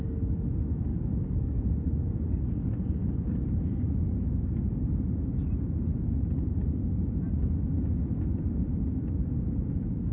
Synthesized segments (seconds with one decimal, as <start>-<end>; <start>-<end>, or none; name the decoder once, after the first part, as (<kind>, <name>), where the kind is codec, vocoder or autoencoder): 0.9-1.7 (codec, DAC)